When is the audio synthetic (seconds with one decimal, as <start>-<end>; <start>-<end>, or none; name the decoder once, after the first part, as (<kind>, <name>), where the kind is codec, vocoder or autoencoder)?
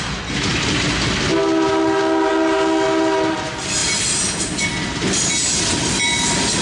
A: none